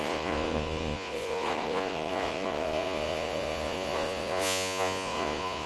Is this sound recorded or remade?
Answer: remade